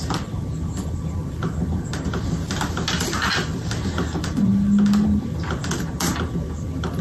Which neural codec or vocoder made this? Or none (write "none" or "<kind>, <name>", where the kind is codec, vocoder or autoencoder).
none